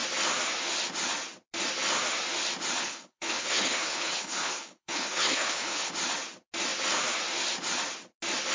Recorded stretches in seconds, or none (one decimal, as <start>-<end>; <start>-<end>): 0.0-2.8; 5.9-8.5